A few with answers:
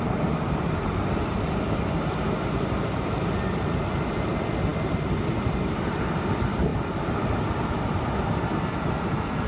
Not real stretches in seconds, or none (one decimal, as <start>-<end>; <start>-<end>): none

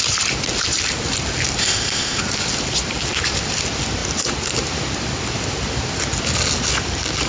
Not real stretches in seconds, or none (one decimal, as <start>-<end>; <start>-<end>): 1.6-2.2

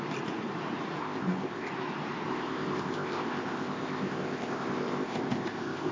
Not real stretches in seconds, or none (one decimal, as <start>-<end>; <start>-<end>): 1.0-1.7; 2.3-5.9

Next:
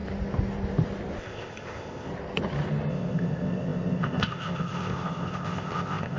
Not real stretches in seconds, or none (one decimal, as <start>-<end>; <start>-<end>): 1.2-2.1; 2.9-6.2